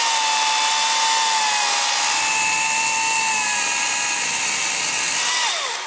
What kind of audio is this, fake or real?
real